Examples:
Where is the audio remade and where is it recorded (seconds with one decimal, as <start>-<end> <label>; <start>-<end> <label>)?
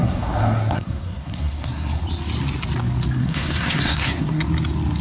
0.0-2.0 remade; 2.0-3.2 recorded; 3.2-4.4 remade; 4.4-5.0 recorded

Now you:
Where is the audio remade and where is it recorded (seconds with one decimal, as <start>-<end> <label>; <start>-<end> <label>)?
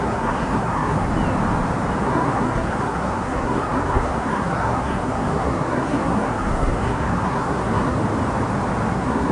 0.0-1.1 remade; 1.1-2.0 recorded; 2.0-8.0 remade; 8.0-8.9 recorded; 8.9-9.3 remade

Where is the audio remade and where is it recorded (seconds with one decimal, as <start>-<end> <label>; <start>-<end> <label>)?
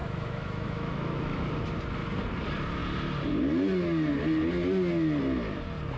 0.0-1.5 remade; 1.5-6.0 recorded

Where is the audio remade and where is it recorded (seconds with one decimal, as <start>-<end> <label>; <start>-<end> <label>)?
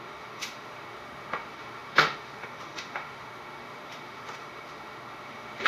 0.0-5.7 remade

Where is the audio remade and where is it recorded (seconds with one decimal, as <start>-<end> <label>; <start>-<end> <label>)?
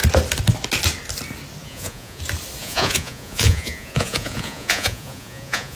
0.0-1.6 recorded; 1.6-2.2 remade; 2.2-2.6 recorded; 2.6-5.8 remade